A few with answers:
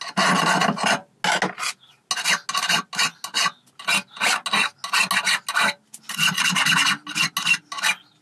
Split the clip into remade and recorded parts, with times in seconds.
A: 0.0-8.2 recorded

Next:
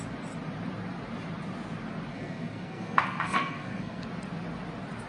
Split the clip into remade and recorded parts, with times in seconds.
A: 0.0-2.1 recorded; 2.1-4.0 remade; 4.0-5.1 recorded

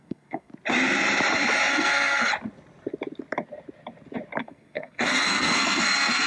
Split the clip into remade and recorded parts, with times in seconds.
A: 0.0-0.5 remade; 0.5-1.7 recorded; 1.7-2.3 remade; 2.3-4.4 recorded; 4.4-6.3 remade

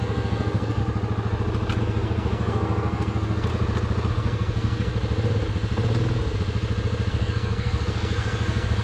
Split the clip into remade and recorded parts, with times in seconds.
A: 0.0-0.8 remade; 0.8-1.8 recorded; 1.8-3.5 remade; 3.5-4.1 recorded; 4.1-4.9 remade; 4.9-7.1 recorded; 7.1-8.8 remade

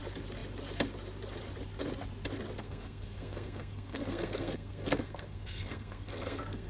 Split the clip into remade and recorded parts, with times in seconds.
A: 0.0-2.6 recorded; 2.6-6.7 remade

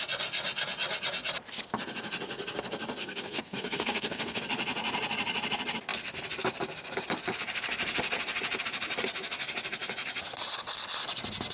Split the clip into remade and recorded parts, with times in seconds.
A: 0.0-3.0 recorded; 3.0-4.4 remade; 4.4-11.5 recorded

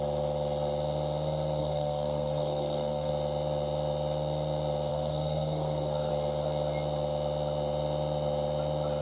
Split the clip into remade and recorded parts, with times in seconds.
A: 0.0-1.6 recorded; 1.6-3.1 remade; 3.1-4.9 recorded; 4.9-6.1 remade; 6.1-9.0 recorded